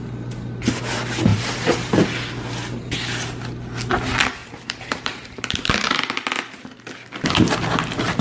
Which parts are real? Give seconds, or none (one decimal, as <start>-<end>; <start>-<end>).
0.0-4.4; 5.4-8.2